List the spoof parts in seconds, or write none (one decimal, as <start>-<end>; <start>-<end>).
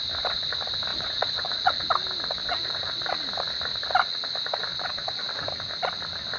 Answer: 0.9-1.7; 2.4-3.0; 4.7-5.2